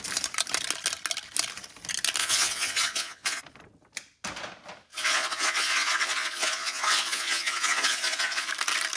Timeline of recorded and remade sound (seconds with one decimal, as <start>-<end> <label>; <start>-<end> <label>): 0.0-2.2 recorded; 2.2-3.4 remade; 3.4-4.9 recorded; 4.9-8.5 remade; 8.5-9.0 recorded